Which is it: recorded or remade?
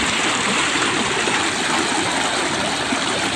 remade